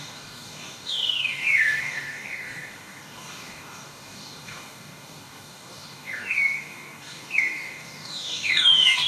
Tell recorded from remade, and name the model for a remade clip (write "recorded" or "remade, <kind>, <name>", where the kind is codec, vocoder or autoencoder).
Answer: remade, codec, DAC